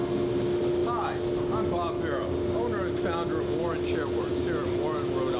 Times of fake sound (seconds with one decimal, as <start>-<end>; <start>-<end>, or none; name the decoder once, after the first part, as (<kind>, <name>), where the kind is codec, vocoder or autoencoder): none